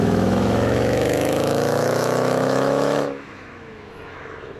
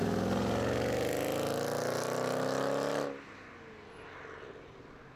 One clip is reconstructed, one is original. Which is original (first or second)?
second